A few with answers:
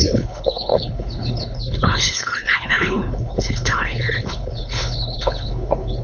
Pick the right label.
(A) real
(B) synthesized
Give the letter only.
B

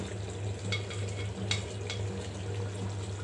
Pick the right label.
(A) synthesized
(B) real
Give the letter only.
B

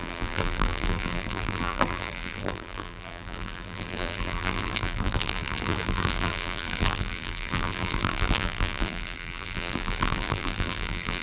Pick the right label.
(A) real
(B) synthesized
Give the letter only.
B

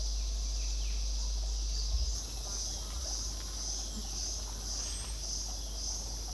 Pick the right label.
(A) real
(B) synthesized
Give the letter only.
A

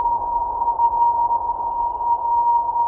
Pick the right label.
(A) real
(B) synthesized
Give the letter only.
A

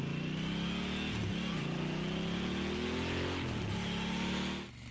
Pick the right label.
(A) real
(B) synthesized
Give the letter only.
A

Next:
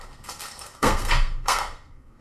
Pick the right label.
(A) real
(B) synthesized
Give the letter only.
B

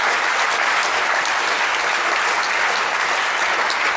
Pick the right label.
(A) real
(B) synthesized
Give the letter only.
A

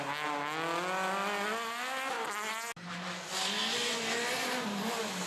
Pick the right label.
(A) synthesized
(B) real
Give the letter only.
B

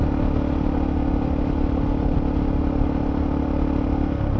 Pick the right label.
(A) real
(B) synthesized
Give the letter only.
A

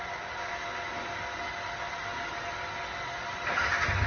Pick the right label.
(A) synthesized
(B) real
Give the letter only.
B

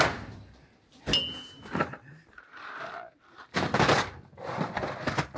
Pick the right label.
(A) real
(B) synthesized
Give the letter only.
B